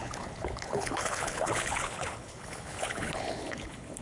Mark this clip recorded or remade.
remade